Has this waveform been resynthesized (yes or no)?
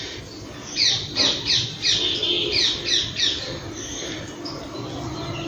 no